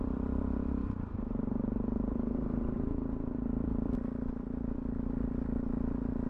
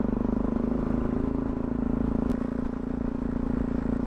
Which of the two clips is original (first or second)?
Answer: second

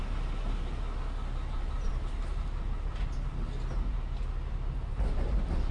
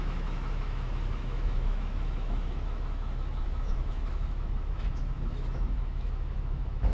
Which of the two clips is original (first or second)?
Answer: first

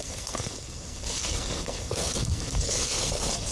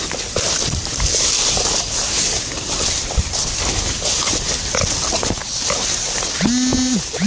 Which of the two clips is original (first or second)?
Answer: second